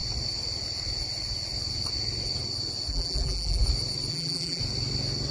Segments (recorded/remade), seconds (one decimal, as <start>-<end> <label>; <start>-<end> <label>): 0.0-2.9 recorded; 2.9-3.6 remade; 3.6-4.1 recorded; 4.1-4.6 remade; 4.6-5.3 recorded